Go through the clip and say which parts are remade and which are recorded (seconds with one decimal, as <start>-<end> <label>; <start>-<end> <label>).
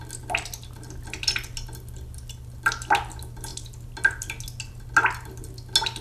0.0-6.0 recorded